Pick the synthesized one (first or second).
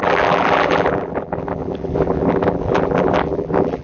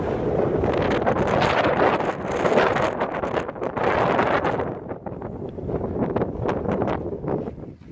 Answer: first